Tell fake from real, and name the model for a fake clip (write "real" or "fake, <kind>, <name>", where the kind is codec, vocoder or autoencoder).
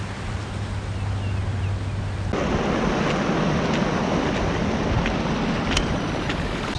real